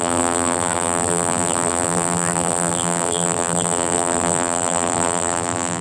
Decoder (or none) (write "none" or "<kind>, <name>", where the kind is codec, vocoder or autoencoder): vocoder, BigVGAN v2